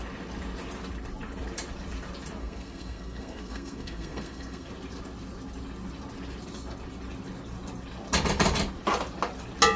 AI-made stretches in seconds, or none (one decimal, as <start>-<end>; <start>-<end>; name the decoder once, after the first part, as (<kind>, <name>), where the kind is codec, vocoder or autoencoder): 2.4-4.7 (codec, SNAC)